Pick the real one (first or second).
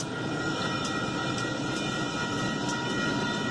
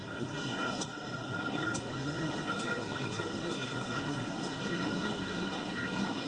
first